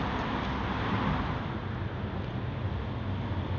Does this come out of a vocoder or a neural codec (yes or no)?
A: no